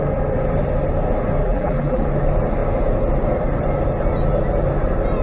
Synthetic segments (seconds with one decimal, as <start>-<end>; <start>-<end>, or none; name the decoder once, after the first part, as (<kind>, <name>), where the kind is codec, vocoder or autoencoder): 1.4-2.0 (vocoder, BigVGAN v2)